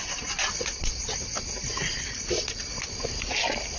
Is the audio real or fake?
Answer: real